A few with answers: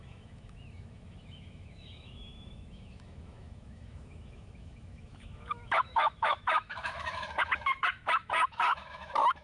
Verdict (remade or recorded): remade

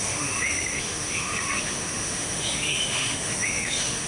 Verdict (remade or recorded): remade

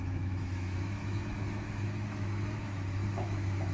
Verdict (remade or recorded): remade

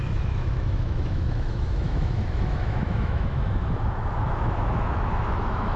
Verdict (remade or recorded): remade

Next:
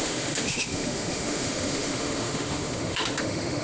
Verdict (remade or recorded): remade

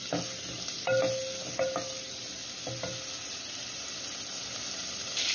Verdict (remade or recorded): recorded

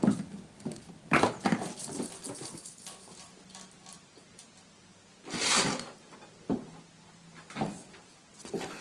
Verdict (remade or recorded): recorded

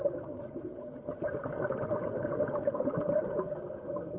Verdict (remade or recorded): recorded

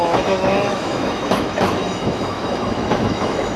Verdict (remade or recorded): remade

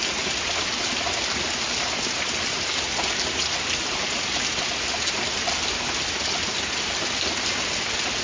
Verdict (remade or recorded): recorded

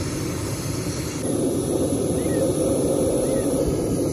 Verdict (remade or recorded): recorded